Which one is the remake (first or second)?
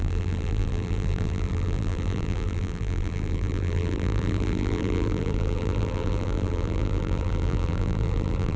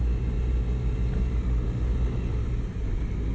first